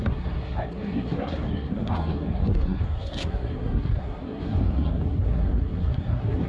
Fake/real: fake